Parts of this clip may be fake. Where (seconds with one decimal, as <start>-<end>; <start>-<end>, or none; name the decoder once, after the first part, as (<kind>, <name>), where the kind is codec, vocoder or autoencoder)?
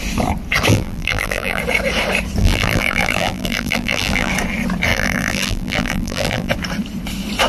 0.7-1.6 (vocoder, BigVGAN v2); 2.4-4.3; 4.9-6.5